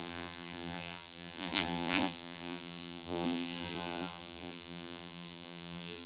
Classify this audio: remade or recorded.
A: remade